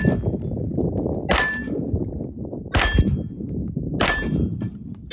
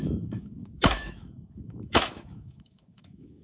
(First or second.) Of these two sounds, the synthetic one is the second